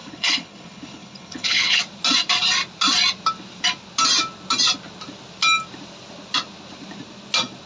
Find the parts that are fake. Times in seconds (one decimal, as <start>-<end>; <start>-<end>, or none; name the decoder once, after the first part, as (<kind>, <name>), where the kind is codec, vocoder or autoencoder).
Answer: 0.0-1.8 (codec, HILCodec)